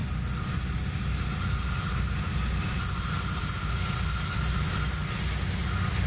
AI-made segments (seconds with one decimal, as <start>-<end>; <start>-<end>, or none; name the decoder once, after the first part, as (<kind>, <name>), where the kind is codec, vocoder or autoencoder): none